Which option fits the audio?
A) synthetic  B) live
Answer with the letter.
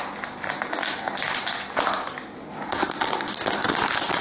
B